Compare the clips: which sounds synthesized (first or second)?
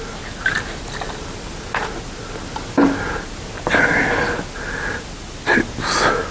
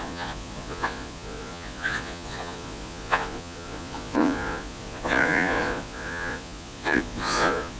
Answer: second